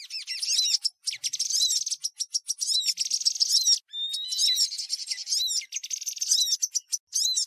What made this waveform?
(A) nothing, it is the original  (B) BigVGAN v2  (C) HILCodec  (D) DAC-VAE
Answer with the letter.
A